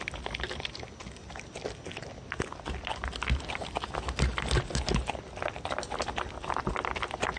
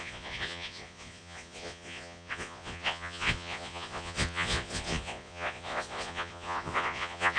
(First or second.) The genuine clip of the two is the first